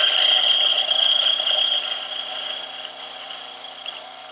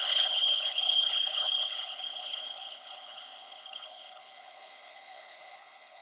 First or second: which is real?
first